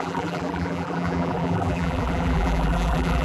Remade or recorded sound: remade